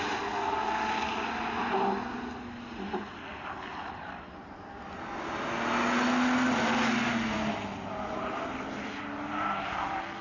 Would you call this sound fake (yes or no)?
no